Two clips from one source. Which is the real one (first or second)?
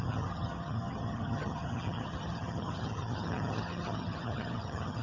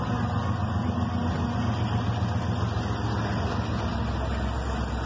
second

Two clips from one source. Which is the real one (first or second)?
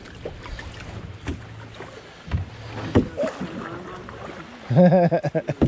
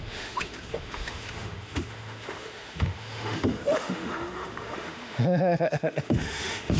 first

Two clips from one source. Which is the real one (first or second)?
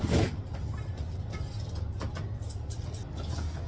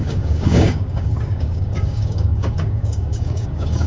first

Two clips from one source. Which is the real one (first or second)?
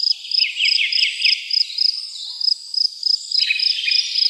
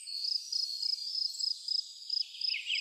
second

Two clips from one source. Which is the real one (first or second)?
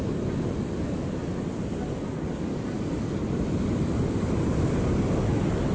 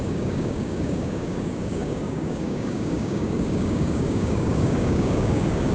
first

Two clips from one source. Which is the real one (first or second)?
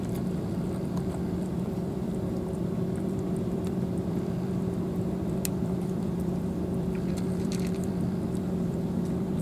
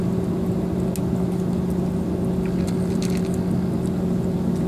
second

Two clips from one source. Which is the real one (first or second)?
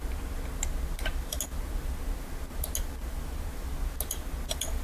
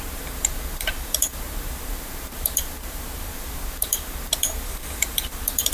first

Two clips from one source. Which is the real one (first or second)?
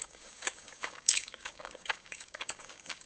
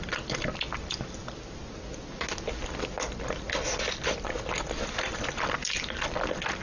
second